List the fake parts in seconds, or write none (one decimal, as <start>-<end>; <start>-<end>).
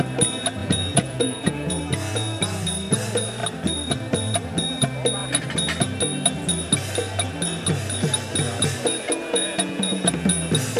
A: 0.6-1.8; 9.2-10.1